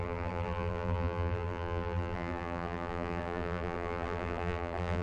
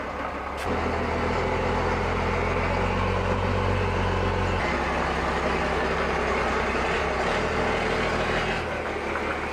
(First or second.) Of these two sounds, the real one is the second